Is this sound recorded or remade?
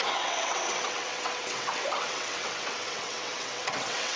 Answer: remade